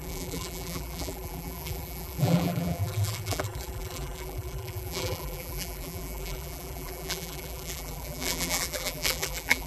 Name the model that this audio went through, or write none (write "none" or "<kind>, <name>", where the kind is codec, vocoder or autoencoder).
vocoder, BigVGAN v2